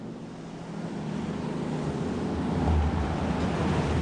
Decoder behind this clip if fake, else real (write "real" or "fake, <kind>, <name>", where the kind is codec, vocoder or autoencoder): real